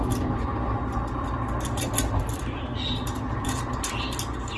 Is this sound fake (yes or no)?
no